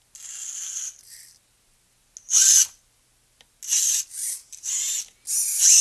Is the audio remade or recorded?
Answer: recorded